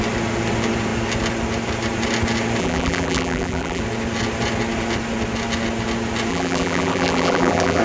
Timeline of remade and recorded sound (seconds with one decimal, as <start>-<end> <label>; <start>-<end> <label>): 0.0-2.6 recorded; 2.6-3.8 remade; 3.8-6.3 recorded; 6.3-7.8 remade